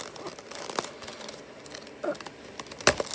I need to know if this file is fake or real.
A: real